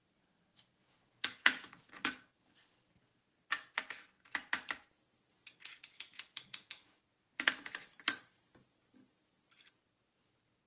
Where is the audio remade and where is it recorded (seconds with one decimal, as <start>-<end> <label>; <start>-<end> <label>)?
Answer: 0.0-0.8 recorded; 0.8-1.9 remade; 1.9-5.3 recorded; 5.3-7.0 remade; 7.0-10.7 recorded